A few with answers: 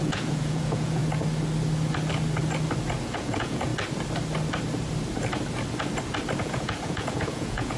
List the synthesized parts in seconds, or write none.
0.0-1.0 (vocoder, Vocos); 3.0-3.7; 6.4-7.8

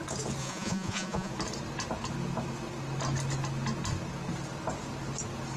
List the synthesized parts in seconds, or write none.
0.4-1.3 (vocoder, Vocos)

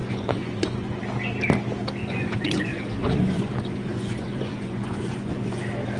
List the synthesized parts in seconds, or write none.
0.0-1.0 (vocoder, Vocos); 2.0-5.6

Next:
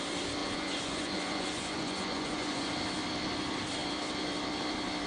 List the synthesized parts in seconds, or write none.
0.4-2.7 (vocoder, Vocos)

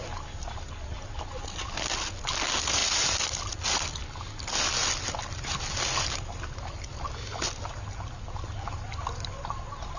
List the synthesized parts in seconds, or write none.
none